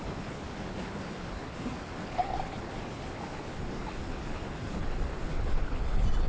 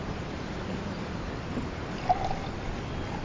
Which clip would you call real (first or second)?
second